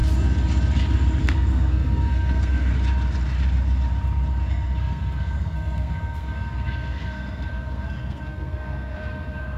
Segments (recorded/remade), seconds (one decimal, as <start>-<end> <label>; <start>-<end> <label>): 0.0-1.2 recorded; 1.2-2.7 remade; 2.7-4.5 recorded; 4.5-9.6 remade